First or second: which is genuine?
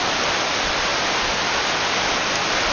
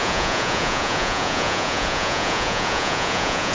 first